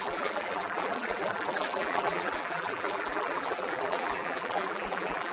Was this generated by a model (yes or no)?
yes